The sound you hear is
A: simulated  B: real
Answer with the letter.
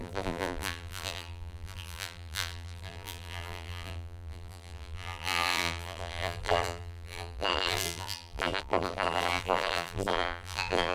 A